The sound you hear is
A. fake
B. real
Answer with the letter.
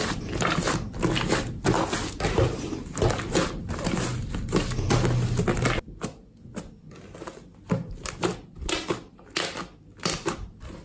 B